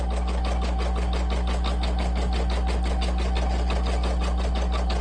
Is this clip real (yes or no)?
yes